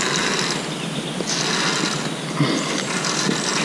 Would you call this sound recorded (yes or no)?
yes